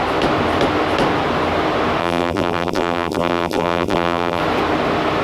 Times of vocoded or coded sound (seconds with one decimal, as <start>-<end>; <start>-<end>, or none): 2.0-4.4